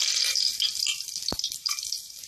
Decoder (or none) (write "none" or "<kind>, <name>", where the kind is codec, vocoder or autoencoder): vocoder, BigVGAN v2